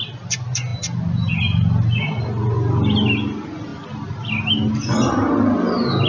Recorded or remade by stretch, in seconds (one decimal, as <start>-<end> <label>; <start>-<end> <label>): 0.0-6.1 recorded